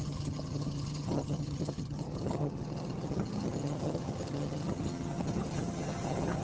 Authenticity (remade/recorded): remade